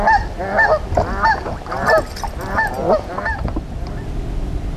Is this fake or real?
real